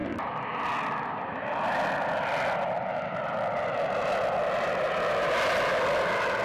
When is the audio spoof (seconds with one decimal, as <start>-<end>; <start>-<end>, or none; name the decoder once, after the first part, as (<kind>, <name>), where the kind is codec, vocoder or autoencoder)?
none